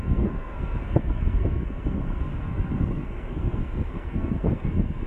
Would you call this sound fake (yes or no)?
yes